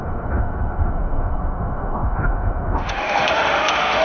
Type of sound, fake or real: fake